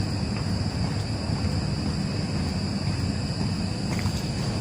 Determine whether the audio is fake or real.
real